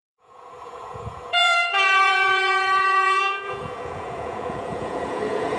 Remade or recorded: remade